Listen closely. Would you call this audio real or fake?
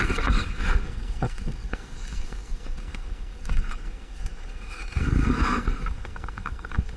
fake